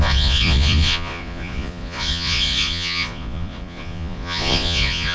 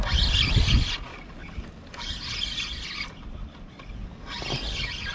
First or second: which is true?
second